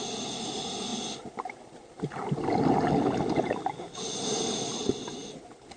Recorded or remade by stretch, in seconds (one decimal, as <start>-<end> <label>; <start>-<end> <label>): 0.0-5.8 recorded